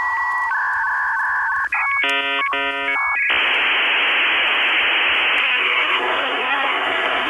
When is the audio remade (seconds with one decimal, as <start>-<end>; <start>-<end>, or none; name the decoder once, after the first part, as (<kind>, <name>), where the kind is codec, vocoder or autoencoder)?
5.4-7.3 (codec, SNAC)